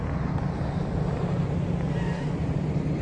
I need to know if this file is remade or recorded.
recorded